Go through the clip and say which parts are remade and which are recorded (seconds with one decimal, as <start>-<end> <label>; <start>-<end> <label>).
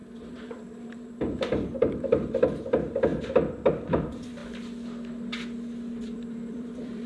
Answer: 0.0-4.4 remade; 4.4-6.0 recorded; 6.0-7.1 remade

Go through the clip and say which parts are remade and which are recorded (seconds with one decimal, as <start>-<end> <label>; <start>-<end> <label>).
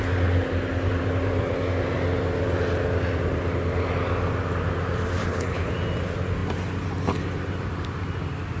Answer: 0.0-5.2 recorded; 5.2-5.7 remade; 5.7-8.6 recorded